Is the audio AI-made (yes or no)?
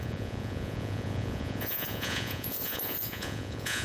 yes